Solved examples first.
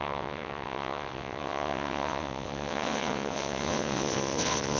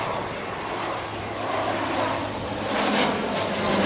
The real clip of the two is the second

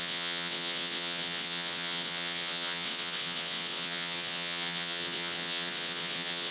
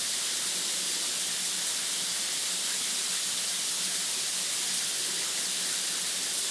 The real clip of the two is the second